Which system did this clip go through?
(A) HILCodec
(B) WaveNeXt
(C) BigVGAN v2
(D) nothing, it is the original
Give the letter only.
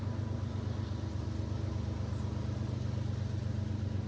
D